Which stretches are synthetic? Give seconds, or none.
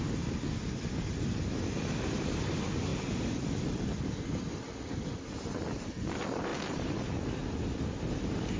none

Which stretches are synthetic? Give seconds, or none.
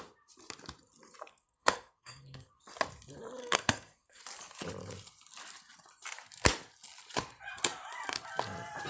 1.3-2.5 (codec, SNAC); 3.4-4.2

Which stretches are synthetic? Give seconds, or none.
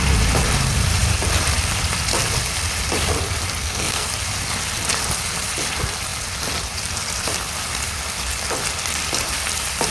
3.6-4.1 (codec, SNAC)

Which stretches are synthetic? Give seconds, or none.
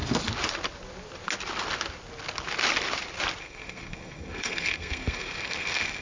3.4-6.0 (codec, SNAC)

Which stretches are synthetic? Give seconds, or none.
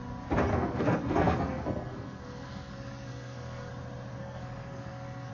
0.5-3.7 (codec, SNAC); 4.2-5.3